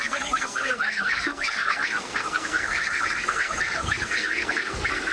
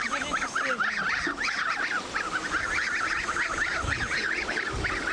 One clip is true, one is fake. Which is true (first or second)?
second